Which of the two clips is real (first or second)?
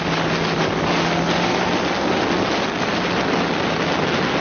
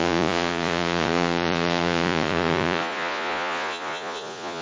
first